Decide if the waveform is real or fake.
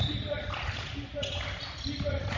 real